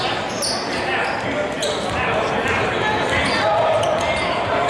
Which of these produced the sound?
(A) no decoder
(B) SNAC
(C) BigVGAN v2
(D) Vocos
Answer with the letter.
A